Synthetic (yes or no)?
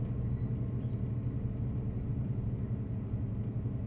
no